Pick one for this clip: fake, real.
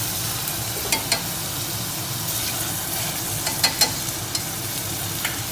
real